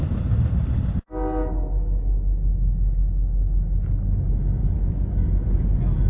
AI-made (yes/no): no